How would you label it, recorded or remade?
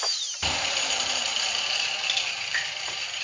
remade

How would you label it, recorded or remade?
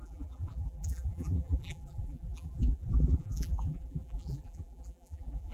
remade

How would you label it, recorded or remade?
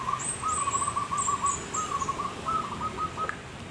remade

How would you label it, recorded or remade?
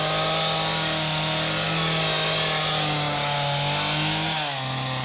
recorded